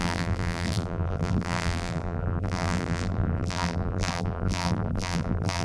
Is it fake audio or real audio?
fake